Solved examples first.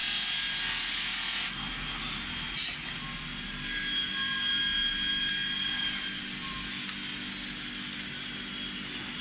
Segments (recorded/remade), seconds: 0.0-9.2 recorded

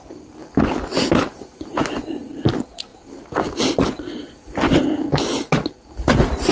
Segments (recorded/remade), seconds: 0.0-6.5 recorded

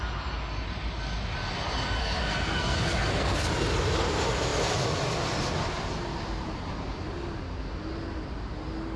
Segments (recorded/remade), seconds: 0.0-2.0 recorded; 2.0-3.5 remade; 3.5-9.0 recorded